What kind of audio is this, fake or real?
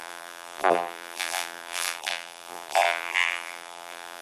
fake